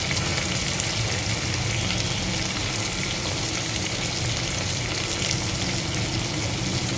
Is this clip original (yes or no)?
yes